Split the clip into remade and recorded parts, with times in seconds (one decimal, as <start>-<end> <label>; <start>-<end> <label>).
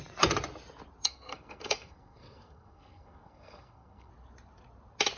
0.0-1.0 recorded; 1.0-4.1 remade; 4.1-5.2 recorded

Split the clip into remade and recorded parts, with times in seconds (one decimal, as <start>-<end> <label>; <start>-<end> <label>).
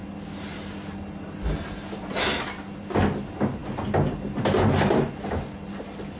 0.0-6.2 recorded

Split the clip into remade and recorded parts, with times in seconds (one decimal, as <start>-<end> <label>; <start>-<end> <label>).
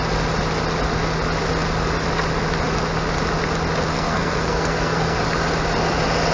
0.0-3.9 recorded; 3.9-5.2 remade; 5.2-6.3 recorded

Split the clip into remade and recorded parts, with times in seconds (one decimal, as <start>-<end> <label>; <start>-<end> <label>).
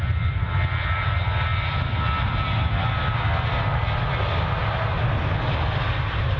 0.0-6.4 recorded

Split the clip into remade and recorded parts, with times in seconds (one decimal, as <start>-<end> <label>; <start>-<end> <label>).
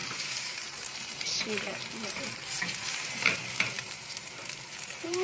0.0-5.2 remade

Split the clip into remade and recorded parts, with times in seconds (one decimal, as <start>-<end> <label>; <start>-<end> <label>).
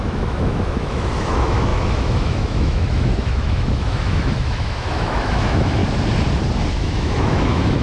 0.0-5.8 remade; 5.8-6.7 recorded; 6.7-7.8 remade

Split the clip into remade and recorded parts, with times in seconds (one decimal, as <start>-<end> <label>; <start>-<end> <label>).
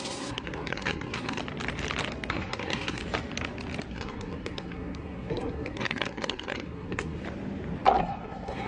0.0-1.4 remade; 1.4-2.3 recorded; 2.3-3.0 remade; 3.0-3.9 recorded; 3.9-7.2 remade; 7.2-8.0 recorded; 8.0-8.7 remade